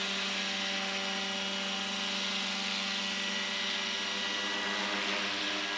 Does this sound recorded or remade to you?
recorded